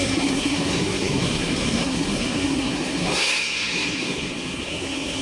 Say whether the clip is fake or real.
fake